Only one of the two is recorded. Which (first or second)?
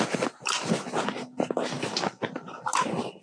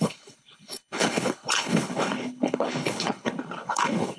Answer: first